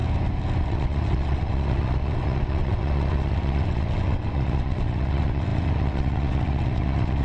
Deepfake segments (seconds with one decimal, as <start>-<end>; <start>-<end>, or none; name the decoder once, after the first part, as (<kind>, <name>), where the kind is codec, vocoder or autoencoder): 0.6-7.2 (vocoder, WaveNeXt)